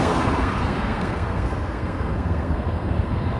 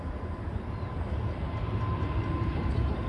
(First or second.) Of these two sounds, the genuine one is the second